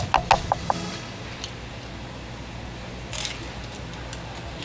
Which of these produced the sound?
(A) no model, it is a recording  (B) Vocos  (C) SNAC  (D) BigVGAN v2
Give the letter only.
A